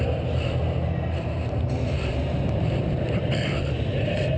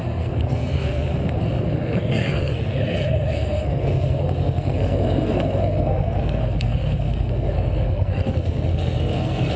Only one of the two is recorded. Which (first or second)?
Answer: first